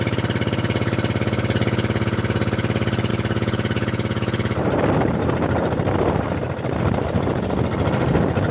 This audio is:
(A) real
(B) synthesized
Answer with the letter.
A